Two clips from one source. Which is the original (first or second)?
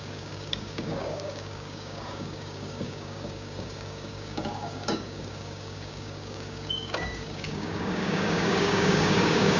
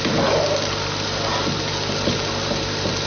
second